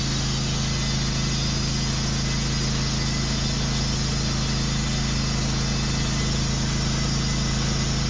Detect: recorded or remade recorded